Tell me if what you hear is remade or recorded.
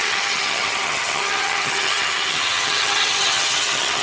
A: remade